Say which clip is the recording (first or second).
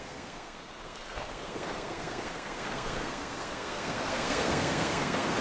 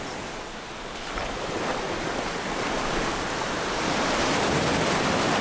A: second